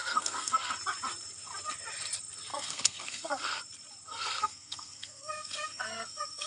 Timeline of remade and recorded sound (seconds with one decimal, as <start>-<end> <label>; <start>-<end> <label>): 0.0-0.7 remade; 0.7-2.5 recorded; 2.5-3.6 remade; 3.6-4.1 recorded; 4.1-6.5 remade

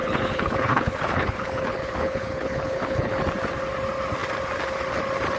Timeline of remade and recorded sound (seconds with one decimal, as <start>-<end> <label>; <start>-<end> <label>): 0.0-3.2 remade; 3.2-5.4 recorded